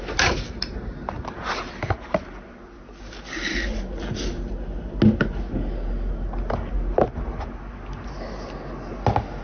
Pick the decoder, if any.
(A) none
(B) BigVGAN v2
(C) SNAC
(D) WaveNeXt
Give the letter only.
A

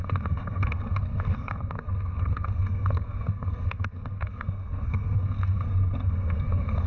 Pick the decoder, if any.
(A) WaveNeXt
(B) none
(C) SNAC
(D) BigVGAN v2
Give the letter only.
C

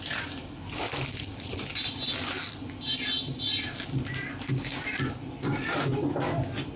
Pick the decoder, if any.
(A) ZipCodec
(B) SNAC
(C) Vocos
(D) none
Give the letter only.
D